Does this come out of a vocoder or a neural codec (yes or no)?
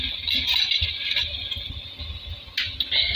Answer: no